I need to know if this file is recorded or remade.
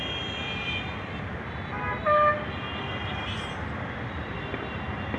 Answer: recorded